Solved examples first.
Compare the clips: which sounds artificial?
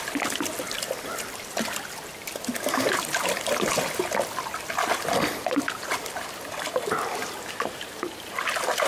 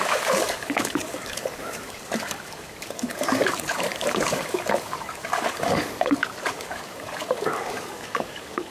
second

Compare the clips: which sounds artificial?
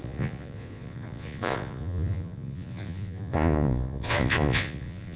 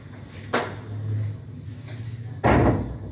first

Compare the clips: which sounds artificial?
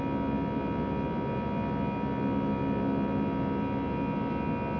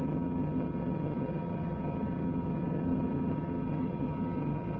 second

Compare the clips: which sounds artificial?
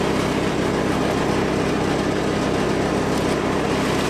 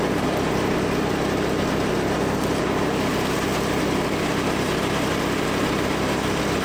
second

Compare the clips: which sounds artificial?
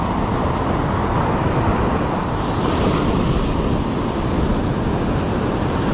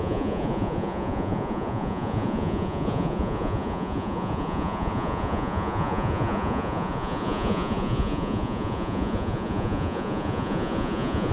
second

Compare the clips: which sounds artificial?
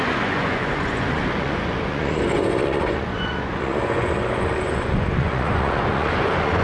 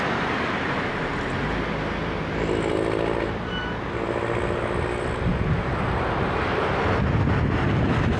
first